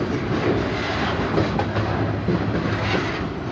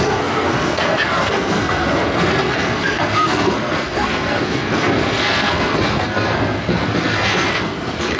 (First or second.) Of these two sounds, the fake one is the second